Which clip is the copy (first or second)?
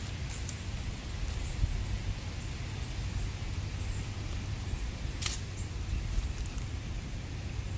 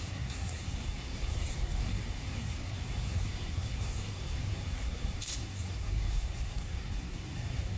second